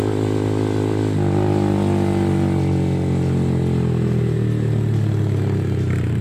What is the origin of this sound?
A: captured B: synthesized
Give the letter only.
A